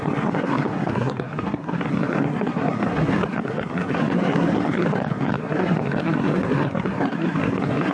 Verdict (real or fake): fake